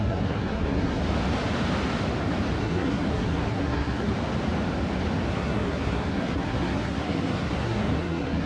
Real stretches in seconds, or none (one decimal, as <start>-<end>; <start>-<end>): 1.0-2.6; 4.1-5.3